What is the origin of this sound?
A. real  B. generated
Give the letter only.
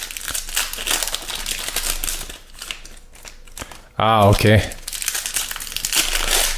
A